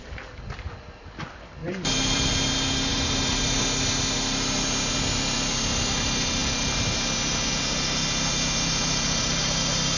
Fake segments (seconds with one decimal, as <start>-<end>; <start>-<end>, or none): 1.6-2.3; 2.9-3.4